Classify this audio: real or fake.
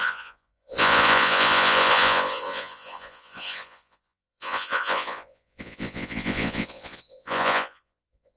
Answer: fake